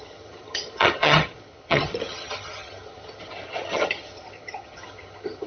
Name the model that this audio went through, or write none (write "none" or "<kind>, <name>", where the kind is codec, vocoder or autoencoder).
vocoder, HiFi-GAN